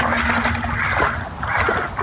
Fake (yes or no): no